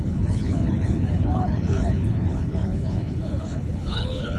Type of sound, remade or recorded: remade